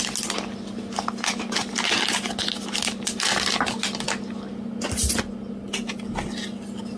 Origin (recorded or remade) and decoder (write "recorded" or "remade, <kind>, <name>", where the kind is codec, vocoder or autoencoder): recorded